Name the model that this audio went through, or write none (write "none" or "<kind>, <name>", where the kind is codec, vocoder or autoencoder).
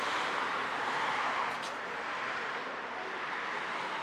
none